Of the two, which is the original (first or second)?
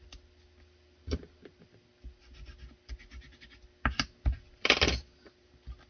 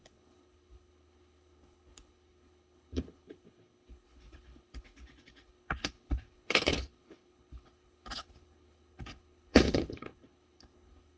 first